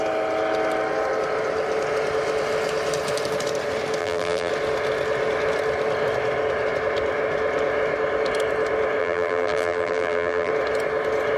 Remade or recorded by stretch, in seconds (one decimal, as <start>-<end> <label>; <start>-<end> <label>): 0.0-4.0 recorded; 4.0-4.5 remade; 4.5-9.0 recorded; 9.0-10.5 remade; 10.5-11.4 recorded